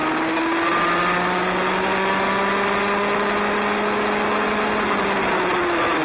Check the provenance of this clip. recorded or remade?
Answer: recorded